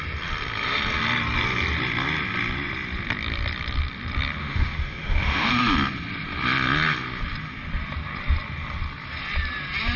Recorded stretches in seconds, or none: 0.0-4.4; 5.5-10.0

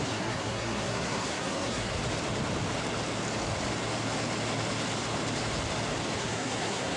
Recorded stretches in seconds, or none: 2.0-6.2

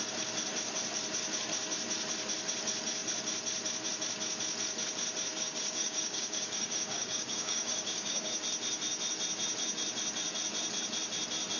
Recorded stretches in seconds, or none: 0.0-5.3; 8.3-11.6

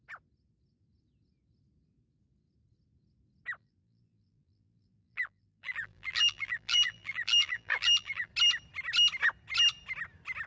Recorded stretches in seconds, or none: 0.0-3.6; 8.3-10.5

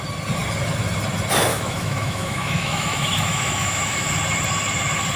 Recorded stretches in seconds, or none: 0.0-1.5; 4.1-5.2

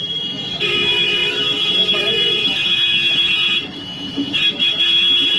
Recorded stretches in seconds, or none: none

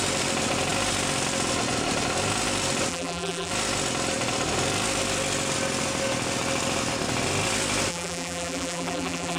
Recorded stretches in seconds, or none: 0.0-2.9; 3.5-7.9

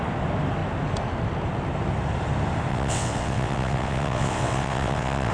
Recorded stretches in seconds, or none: 0.0-2.7